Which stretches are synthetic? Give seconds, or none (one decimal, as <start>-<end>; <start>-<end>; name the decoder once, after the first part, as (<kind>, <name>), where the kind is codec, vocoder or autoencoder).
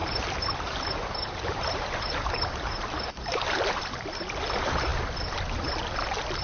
0.0-3.8 (vocoder, BigVGAN v2)